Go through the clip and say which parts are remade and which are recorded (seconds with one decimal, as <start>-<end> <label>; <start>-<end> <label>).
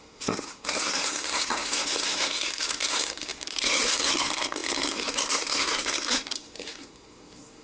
0.0-7.6 remade